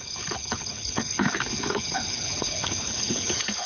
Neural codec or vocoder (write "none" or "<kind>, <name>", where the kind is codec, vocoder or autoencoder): codec, HILCodec